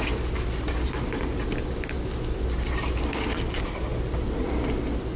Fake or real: real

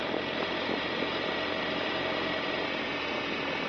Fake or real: real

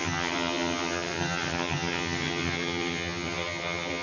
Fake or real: fake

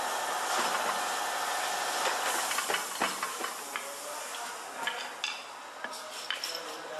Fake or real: real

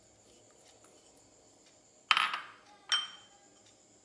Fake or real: real